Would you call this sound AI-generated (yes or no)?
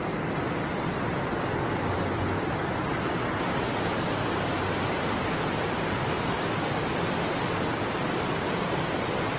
no